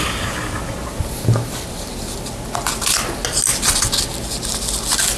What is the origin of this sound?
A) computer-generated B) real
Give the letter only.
B